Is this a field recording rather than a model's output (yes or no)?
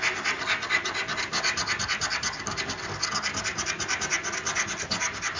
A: yes